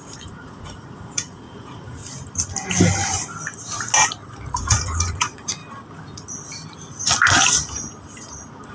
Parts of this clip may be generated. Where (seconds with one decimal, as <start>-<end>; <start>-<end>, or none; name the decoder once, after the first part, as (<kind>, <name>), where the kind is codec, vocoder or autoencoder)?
0.0-2.0 (vocoder, Vocos); 4.6-5.6

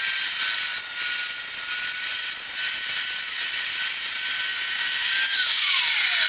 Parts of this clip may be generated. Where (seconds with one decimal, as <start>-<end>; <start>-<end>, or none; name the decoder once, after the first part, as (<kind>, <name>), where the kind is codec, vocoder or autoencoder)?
4.5-5.8 (codec, DAC)

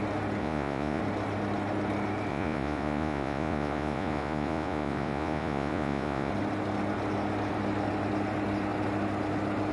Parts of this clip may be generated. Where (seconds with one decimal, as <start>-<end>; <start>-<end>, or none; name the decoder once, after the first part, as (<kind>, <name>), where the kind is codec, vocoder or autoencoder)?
0.4-1.0 (vocoder, Vocos); 2.3-6.3

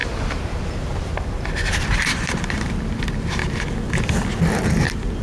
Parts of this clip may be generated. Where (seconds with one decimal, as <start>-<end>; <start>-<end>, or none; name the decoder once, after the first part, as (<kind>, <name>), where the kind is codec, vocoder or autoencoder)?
0.0-3.4 (vocoder, BigVGAN v2)